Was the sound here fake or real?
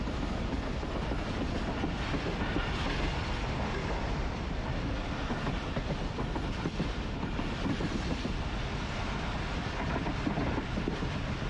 real